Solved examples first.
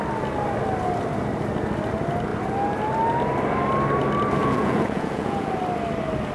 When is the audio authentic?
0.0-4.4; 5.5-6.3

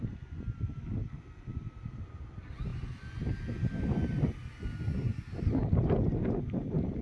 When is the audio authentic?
0.0-7.0

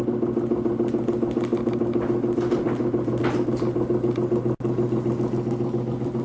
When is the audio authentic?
0.0-6.2

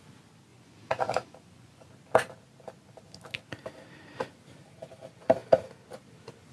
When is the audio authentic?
0.0-0.5; 1.9-6.5

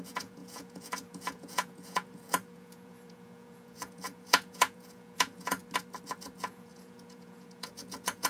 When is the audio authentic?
5.6-6.3

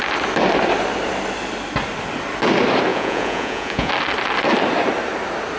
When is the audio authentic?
0.0-2.9; 3.9-5.6

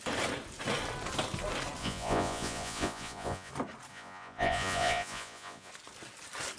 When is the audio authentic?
0.0-1.8; 3.5-3.9; 5.7-6.6

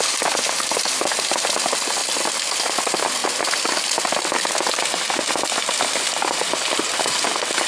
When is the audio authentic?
0.0-7.7